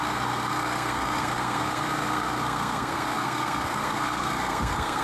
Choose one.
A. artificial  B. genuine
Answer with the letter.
A